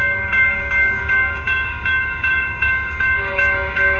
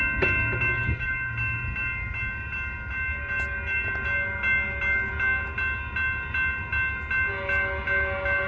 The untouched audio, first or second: second